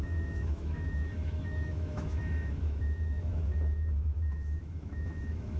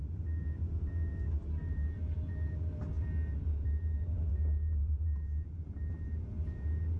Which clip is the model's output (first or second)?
first